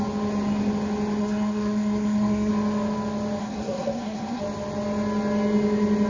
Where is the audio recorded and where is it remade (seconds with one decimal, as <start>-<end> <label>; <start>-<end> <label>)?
0.0-1.2 recorded; 1.2-2.5 remade; 2.5-3.4 recorded; 3.4-4.4 remade; 4.4-6.1 recorded